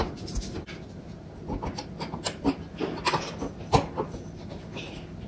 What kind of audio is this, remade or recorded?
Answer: recorded